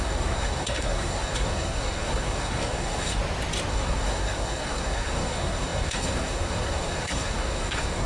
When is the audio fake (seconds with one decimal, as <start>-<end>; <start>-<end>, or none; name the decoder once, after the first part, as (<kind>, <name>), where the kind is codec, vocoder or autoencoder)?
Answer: 0.0-3.2 (codec, SNAC); 3.7-8.1